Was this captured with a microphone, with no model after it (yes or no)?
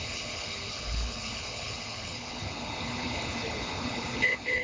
no